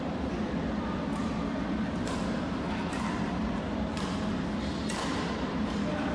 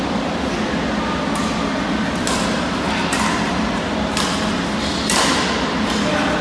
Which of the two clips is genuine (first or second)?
second